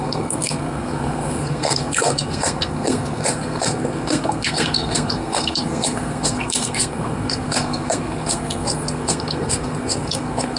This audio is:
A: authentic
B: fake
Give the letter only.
B